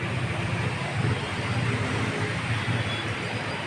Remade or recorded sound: recorded